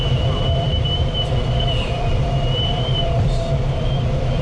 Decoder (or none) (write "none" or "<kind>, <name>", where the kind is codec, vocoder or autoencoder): vocoder, BigVGAN v2